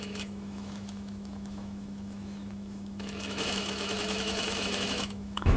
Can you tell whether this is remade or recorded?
remade